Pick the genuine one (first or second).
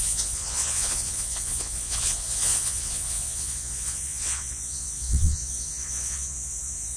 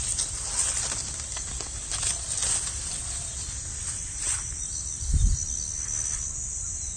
second